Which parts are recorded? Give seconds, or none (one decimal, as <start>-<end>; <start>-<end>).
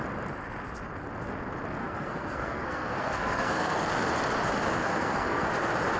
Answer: 0.0-1.8; 3.9-4.8; 5.5-6.0